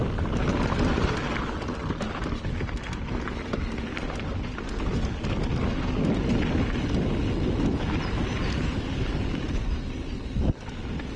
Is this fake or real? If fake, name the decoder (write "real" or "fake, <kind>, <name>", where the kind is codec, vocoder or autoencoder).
real